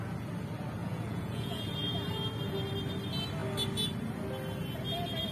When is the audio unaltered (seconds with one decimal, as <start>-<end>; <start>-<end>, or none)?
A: 0.0-0.8; 2.1-5.3